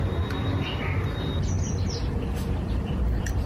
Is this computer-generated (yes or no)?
yes